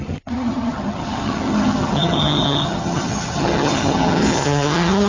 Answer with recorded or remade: remade